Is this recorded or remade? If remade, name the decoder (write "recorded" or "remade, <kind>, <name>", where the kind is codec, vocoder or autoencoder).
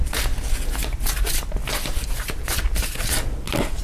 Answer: recorded